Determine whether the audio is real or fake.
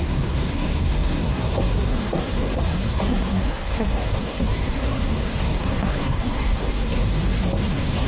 fake